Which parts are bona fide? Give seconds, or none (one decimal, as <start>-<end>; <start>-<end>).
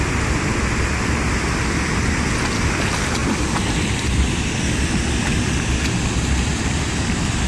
0.0-7.5